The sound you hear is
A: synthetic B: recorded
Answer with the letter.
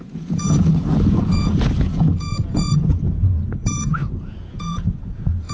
A